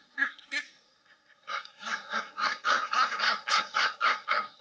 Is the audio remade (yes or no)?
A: yes